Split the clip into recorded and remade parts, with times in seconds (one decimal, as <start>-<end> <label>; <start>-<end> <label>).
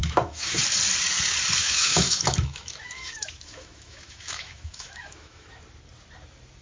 0.0-0.6 remade; 0.6-1.6 recorded; 1.6-5.6 remade; 5.6-6.6 recorded